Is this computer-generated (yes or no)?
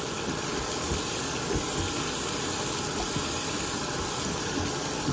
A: no